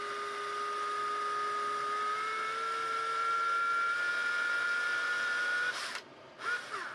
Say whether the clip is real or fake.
real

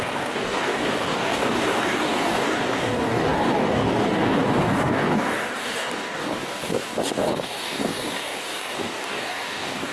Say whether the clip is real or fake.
fake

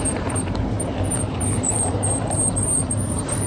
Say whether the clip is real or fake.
fake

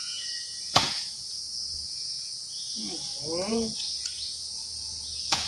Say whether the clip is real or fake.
fake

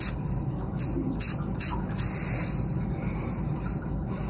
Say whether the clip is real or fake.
real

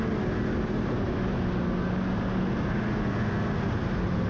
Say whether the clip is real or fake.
real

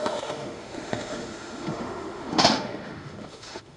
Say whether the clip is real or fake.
fake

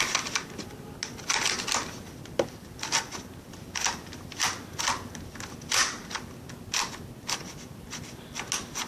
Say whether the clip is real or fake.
real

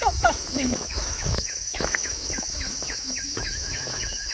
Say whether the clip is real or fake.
fake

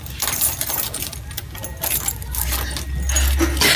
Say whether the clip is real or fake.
real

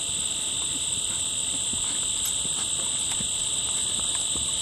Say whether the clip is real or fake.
real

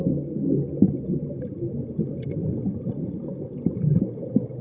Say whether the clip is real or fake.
real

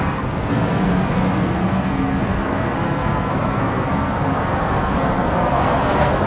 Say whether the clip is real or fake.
fake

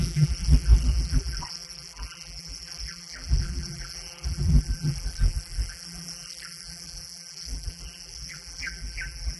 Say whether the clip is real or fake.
fake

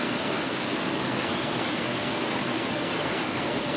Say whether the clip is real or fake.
fake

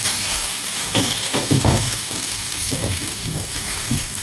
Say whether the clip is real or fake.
fake